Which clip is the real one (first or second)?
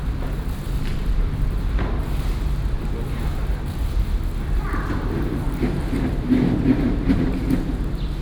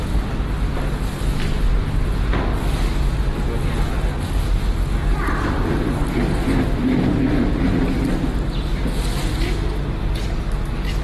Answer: second